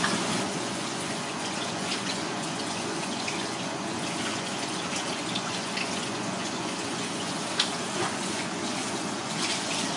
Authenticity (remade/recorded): remade